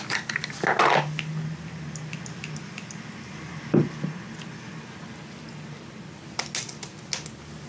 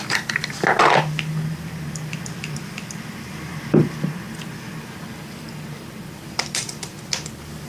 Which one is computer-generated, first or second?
second